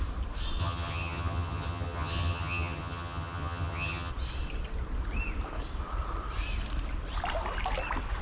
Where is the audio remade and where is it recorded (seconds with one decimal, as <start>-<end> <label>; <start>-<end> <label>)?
0.0-0.6 recorded; 0.6-4.1 remade; 4.1-8.2 recorded